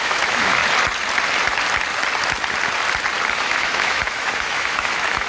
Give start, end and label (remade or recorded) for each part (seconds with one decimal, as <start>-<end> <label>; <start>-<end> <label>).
0.0-0.6 remade; 0.6-3.4 recorded; 3.4-5.3 remade